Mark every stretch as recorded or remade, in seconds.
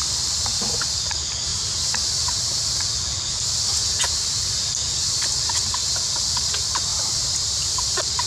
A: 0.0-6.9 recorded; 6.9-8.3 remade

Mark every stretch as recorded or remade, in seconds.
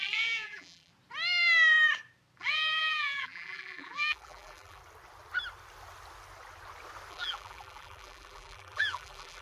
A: 0.0-0.9 remade; 0.9-2.4 recorded; 2.4-4.8 remade; 4.8-7.1 recorded; 7.1-9.4 remade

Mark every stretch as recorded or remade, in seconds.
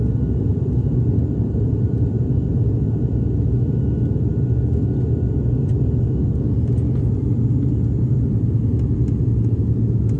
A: 0.0-0.5 recorded; 0.5-2.2 remade; 2.2-10.2 recorded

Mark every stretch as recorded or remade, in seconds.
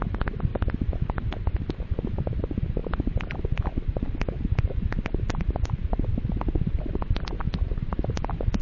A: 0.0-0.5 remade; 0.5-2.2 recorded; 2.2-8.6 remade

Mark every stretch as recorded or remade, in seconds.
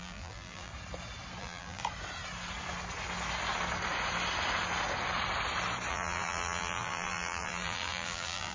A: 0.0-0.7 remade; 0.7-1.4 recorded; 1.4-1.8 remade; 1.8-5.9 recorded; 5.9-8.5 remade